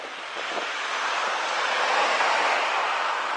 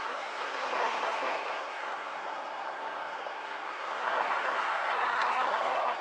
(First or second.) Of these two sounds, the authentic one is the first